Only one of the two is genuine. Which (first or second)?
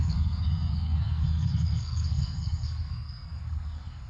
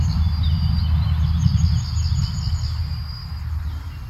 second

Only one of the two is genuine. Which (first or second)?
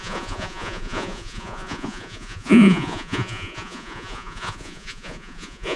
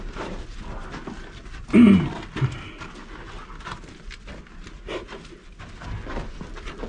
second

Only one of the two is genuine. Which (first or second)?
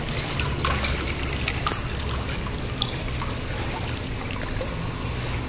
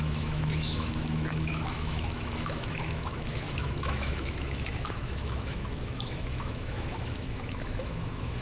first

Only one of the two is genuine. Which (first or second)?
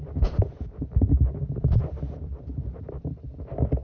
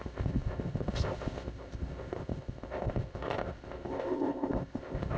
first